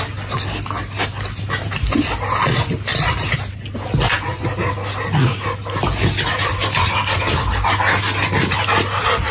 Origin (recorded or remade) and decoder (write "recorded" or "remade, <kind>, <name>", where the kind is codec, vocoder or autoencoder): recorded